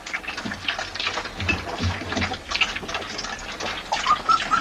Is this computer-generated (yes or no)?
no